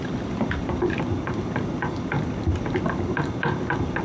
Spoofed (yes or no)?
no